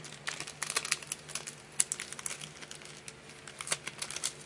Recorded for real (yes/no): yes